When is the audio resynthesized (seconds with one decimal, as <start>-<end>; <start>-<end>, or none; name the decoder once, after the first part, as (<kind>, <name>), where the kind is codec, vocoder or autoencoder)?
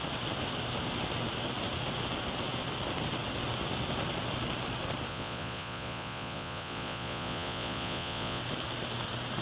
5.1-8.4 (vocoder, Vocos)